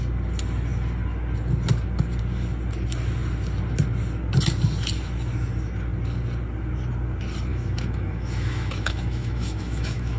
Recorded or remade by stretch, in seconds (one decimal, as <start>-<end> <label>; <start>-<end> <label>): 0.0-7.5 recorded; 7.5-10.2 remade